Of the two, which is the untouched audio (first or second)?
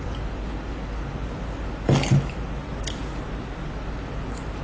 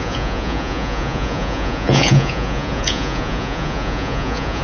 first